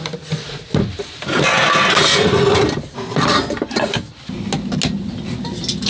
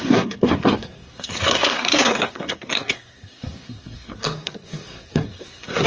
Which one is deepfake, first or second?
second